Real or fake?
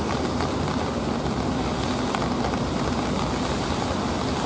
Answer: real